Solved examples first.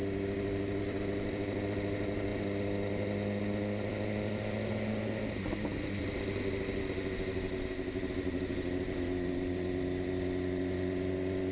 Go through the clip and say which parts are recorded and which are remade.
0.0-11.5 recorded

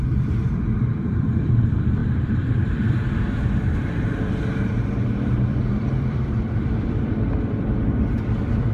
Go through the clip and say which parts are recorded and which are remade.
0.0-8.7 remade

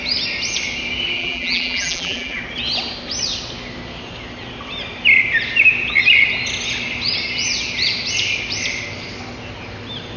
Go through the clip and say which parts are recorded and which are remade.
0.0-1.2 recorded; 1.2-2.4 remade; 2.4-10.2 recorded

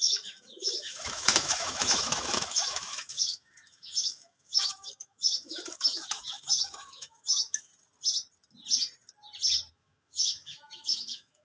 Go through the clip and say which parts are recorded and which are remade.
0.0-7.7 remade; 7.7-9.7 recorded; 9.7-11.4 remade

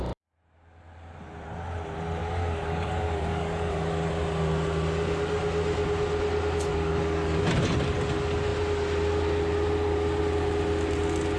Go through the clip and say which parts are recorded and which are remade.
0.0-2.2 recorded; 2.2-4.1 remade; 4.1-6.7 recorded; 6.7-7.4 remade; 7.4-11.4 recorded

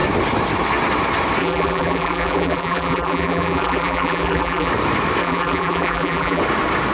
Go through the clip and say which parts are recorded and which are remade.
0.0-1.4 recorded; 1.4-4.7 remade; 4.7-5.2 recorded; 5.2-6.4 remade; 6.4-6.9 recorded

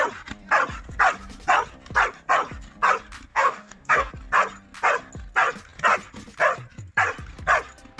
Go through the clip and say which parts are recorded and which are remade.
0.0-3.3 recorded; 3.3-4.1 remade; 4.1-8.0 recorded

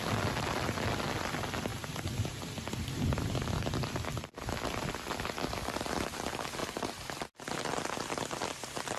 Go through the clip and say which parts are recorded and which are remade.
0.0-1.7 recorded; 1.7-4.3 remade; 4.3-6.6 recorded; 6.6-7.5 remade; 7.5-9.0 recorded